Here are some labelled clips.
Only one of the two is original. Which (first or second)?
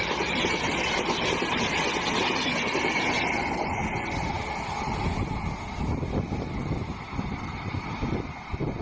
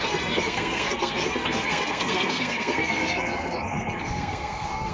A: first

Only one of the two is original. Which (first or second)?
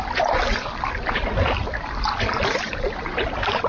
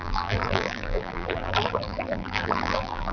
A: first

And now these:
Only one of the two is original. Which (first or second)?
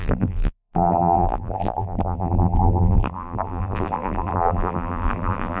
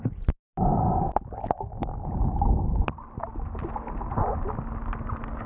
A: second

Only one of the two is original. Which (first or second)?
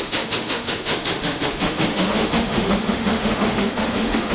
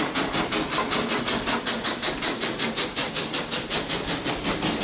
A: second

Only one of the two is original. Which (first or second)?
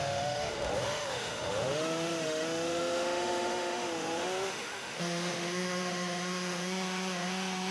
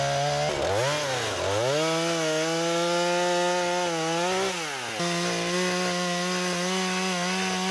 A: second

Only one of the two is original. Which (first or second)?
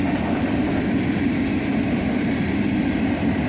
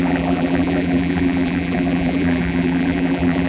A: first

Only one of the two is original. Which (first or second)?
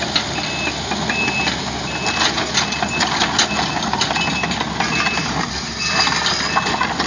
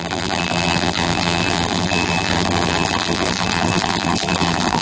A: first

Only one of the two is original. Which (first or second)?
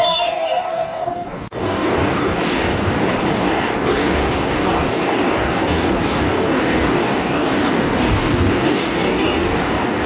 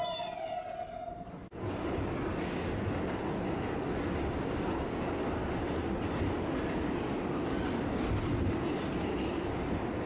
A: second